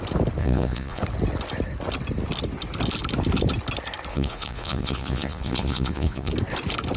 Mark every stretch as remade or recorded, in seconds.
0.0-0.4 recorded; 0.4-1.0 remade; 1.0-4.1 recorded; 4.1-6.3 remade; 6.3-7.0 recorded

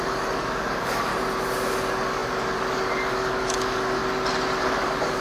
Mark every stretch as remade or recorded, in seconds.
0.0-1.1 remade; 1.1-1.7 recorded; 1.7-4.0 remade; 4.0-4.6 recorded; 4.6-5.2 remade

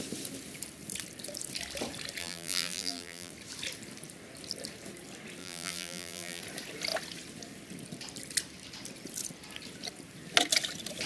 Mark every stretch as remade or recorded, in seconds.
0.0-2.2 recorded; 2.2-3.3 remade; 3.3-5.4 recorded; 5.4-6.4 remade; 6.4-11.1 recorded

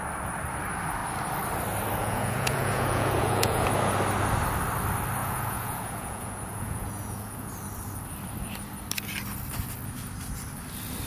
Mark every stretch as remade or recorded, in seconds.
0.0-2.0 recorded; 2.0-3.7 remade; 3.7-5.2 recorded; 5.2-7.5 remade; 7.5-11.1 recorded